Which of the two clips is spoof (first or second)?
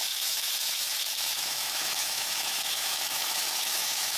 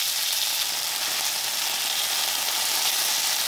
first